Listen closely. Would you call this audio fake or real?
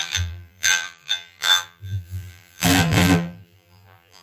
fake